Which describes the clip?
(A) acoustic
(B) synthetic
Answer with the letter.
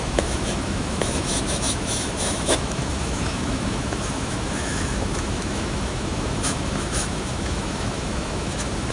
B